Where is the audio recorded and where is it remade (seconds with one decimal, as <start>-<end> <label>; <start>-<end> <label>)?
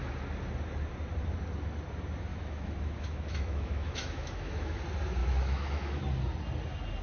0.0-2.3 recorded; 2.3-4.8 remade; 4.8-5.2 recorded; 5.2-6.0 remade; 6.0-7.0 recorded